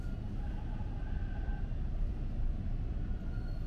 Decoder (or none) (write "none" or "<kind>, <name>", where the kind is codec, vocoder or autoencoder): none